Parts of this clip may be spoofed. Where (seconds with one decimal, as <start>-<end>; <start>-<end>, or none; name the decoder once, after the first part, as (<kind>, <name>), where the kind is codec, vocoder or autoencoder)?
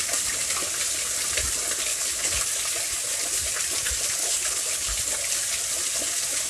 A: 1.9-2.4 (codec, HILCodec); 4.2-5.0